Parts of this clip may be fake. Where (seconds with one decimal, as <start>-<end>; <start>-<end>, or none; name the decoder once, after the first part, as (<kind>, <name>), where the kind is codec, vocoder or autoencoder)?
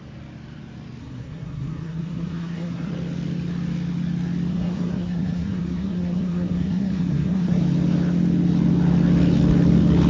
1.0-2.9 (codec, SNAC); 4.5-7.6